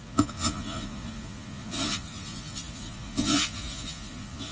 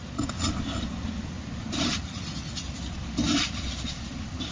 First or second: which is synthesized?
first